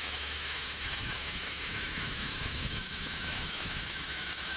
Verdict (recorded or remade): remade